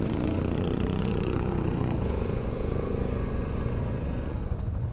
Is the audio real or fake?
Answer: fake